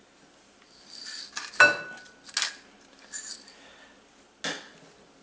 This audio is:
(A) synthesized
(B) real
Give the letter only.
B